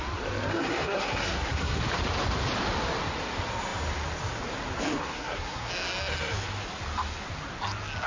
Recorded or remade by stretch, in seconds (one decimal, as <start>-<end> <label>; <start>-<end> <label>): 0.0-0.5 recorded; 0.5-1.8 remade; 1.8-5.0 recorded; 5.0-5.7 remade; 5.7-8.1 recorded

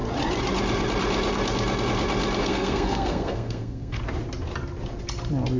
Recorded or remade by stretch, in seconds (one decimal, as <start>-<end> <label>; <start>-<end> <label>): 0.0-2.4 recorded; 2.4-4.0 remade; 4.0-5.6 recorded

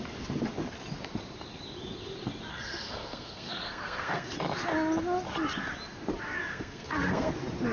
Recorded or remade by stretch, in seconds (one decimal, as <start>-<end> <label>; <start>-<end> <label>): 0.0-2.5 recorded; 2.5-4.3 remade; 4.3-6.5 recorded; 6.5-7.3 remade; 7.3-7.7 recorded

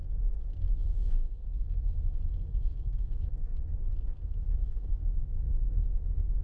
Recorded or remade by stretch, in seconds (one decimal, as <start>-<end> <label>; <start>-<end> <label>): 0.0-0.6 recorded; 0.6-1.6 remade; 1.6-2.5 recorded; 2.5-3.5 remade; 3.5-4.2 recorded; 4.2-6.4 remade